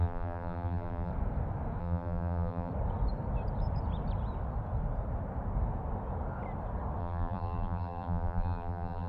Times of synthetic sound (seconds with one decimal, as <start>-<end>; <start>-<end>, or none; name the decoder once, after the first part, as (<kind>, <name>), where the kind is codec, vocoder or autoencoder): 0.0-1.1 (vocoder, BigVGAN v2); 1.8-2.7; 7.0-9.1